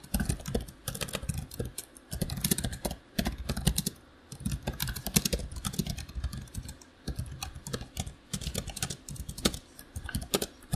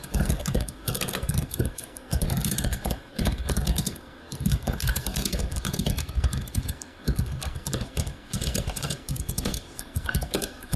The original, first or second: first